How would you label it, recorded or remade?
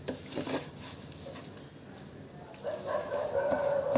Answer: recorded